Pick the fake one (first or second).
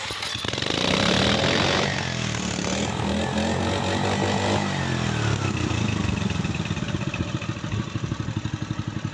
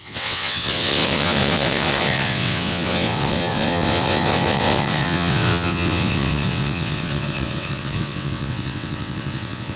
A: second